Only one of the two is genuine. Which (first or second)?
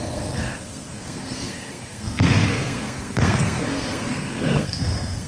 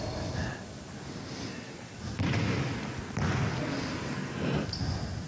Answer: second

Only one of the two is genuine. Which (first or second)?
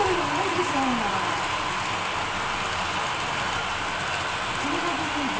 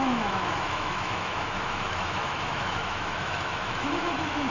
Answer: first